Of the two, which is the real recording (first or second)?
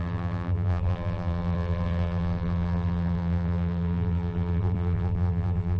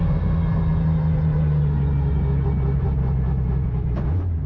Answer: second